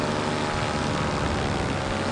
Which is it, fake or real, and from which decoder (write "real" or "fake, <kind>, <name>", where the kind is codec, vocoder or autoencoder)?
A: real